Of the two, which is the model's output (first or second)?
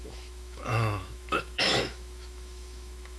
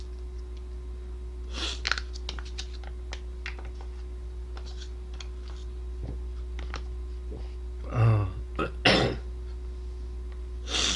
first